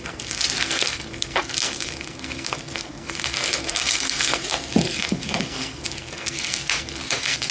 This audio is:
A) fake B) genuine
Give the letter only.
A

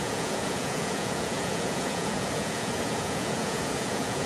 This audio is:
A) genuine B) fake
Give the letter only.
B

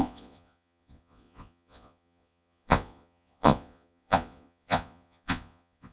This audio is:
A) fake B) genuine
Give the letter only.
A